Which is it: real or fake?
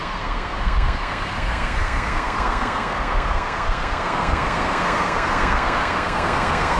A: fake